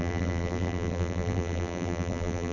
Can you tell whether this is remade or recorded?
remade